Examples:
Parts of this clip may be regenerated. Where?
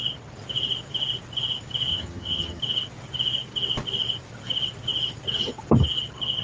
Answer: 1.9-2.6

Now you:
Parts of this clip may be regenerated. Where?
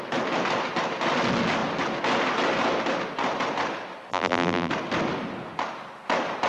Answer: 4.1-4.7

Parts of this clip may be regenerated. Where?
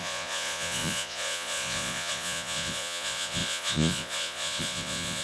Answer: 0.0-5.2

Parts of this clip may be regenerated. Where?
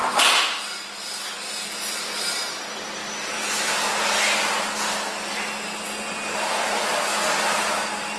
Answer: none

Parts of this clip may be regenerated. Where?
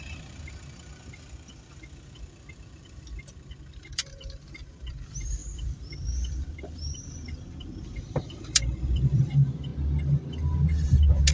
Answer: 0.0-9.7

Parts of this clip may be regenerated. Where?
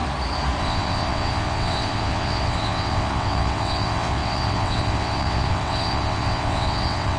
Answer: 0.6-7.2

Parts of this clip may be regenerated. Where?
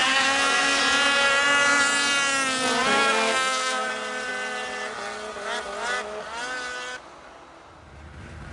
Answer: 0.0-0.8; 2.9-3.9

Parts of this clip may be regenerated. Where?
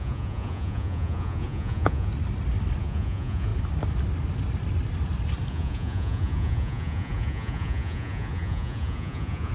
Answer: 0.0-2.1; 2.8-3.5; 5.5-9.5